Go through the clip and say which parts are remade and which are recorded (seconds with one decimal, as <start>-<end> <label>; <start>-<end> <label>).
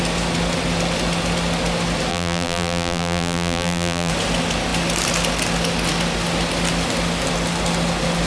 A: 0.0-2.1 recorded; 2.1-4.1 remade; 4.1-8.3 recorded